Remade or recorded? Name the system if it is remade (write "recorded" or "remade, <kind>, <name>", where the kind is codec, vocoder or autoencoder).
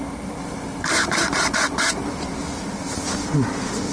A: recorded